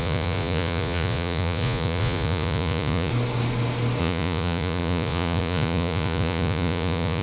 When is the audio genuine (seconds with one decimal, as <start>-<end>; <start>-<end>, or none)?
3.1-4.0